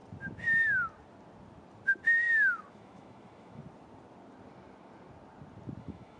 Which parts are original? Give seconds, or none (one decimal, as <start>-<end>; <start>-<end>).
0.0-2.7; 3.6-5.8